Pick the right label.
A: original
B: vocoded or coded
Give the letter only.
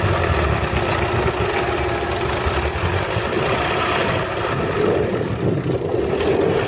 A